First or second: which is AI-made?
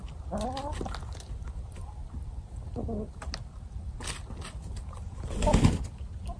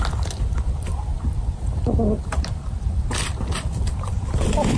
second